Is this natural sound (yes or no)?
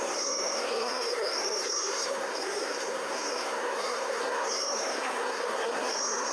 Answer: no